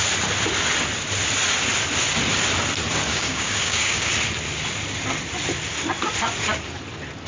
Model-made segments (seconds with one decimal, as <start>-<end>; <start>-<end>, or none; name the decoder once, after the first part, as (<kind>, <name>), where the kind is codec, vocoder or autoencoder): 3.1-4.1 (codec, DAC)